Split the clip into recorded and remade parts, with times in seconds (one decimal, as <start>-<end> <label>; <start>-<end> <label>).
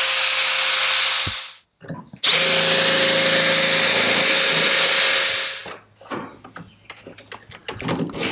0.0-8.3 recorded